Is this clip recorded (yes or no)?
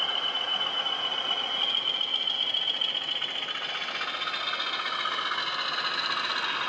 yes